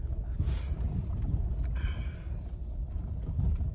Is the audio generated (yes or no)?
no